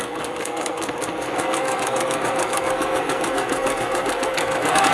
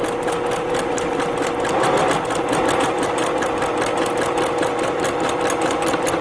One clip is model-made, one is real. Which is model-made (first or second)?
first